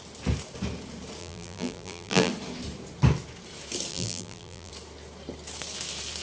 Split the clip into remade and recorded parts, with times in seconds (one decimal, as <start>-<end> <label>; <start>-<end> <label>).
0.0-1.2 recorded; 1.2-2.3 remade; 2.3-3.9 recorded; 3.9-4.7 remade; 4.7-6.2 recorded